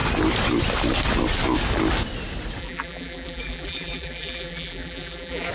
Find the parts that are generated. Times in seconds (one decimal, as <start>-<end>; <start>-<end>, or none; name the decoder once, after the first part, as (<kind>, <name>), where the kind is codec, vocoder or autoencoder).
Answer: 2.6-5.5 (vocoder, BigVGAN v2)